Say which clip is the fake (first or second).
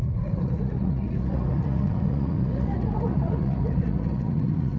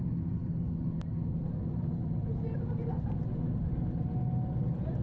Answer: first